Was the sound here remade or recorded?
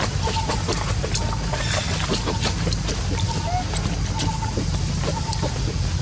remade